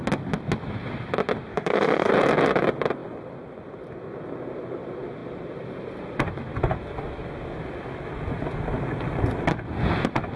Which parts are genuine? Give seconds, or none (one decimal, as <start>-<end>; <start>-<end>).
0.0-1.5; 2.1-10.4